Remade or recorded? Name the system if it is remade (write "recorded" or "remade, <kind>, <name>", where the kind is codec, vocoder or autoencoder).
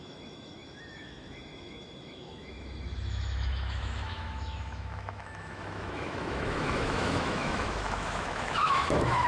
remade, autoencoder, DAC-VAE